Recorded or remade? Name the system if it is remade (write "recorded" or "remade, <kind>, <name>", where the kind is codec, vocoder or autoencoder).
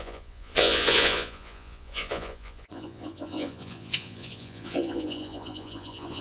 remade, vocoder, Vocos